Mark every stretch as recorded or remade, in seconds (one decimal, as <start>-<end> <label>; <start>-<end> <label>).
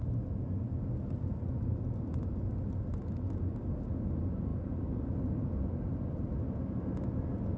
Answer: 0.0-7.6 recorded